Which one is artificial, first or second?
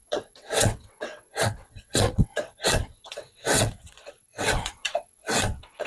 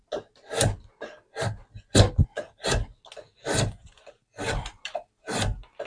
first